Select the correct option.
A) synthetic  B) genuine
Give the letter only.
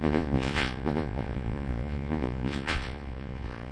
A